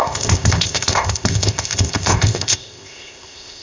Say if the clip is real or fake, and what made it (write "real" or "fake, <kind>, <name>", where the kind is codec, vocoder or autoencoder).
fake, codec, ZipCodec